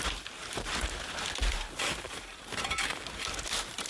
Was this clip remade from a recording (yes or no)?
yes